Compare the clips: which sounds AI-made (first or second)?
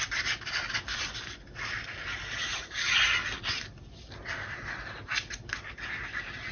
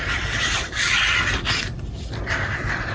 second